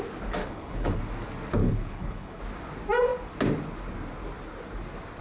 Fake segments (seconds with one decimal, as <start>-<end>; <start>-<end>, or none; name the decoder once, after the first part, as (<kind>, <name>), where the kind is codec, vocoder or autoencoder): 0.4-1.0 (codec, HILCodec); 1.6-2.4